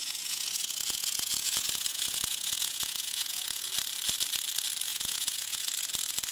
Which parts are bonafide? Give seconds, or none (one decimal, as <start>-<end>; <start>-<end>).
3.7-4.9; 5.7-6.3